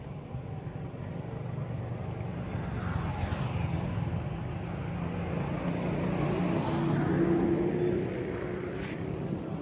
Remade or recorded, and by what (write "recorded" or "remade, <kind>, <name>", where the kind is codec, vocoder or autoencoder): recorded